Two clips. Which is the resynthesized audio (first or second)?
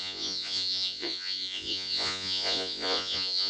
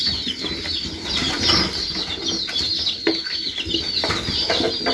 first